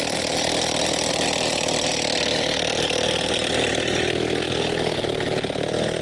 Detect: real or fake real